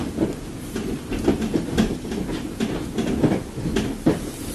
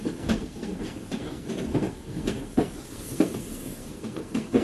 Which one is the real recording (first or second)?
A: first